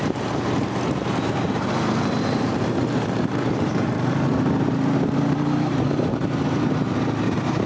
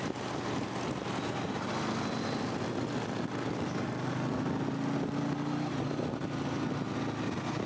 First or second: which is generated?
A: first